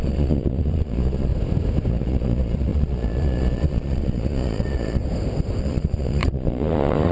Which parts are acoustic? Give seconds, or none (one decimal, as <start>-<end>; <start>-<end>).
1.3-1.9; 5.0-5.6